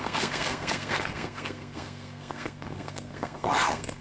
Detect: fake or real fake